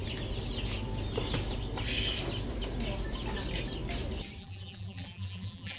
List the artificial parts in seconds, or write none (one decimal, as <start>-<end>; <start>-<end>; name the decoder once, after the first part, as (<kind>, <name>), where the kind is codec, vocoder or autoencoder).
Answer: 4.4-5.8 (vocoder, BigVGAN v2)